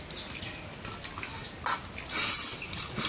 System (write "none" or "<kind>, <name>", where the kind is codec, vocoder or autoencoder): none